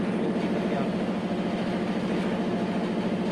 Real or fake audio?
real